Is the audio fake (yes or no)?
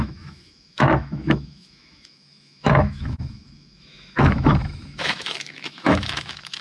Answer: yes